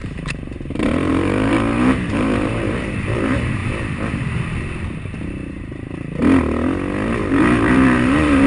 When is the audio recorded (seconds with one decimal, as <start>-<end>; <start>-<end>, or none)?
3.6-4.8; 6.2-7.1